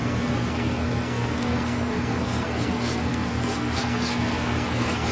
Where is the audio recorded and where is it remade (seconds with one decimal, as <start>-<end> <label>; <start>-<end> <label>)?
0.0-5.1 remade